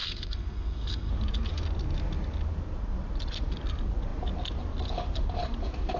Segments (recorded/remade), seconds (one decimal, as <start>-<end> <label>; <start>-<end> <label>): 0.0-1.1 remade; 1.1-6.0 recorded